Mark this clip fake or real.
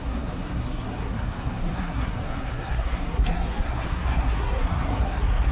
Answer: fake